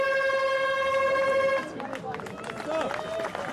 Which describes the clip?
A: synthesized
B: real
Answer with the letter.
B